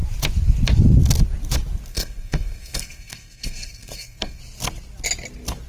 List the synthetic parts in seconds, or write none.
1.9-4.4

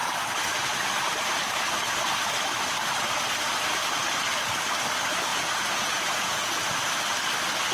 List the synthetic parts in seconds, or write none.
5.3-6.5